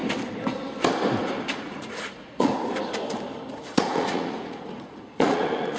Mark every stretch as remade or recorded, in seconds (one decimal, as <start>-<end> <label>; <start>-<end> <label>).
0.0-1.5 recorded; 1.5-2.5 remade; 2.5-3.5 recorded; 3.5-5.8 remade